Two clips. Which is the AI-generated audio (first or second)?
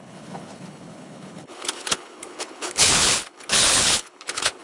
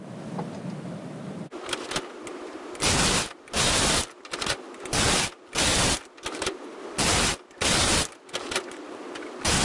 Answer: first